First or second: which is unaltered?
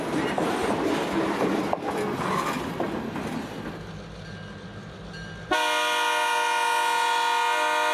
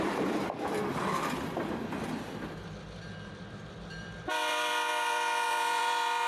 first